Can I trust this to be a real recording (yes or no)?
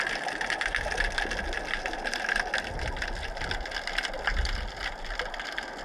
yes